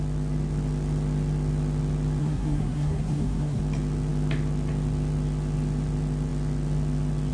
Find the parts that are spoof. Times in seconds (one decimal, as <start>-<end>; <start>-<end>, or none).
2.2-3.6